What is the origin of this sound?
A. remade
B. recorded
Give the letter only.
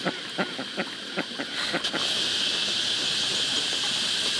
B